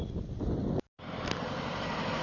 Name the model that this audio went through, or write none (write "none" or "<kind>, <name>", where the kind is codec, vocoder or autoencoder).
none